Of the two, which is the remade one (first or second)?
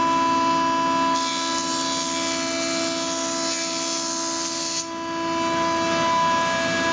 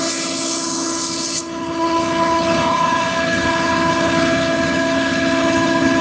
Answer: second